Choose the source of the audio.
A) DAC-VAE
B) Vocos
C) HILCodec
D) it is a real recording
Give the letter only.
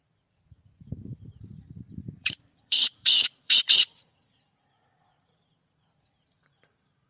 B